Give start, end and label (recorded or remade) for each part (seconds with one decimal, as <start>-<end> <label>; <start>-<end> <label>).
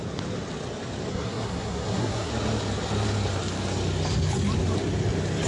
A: 0.0-1.1 recorded; 1.1-2.3 remade; 2.3-5.5 recorded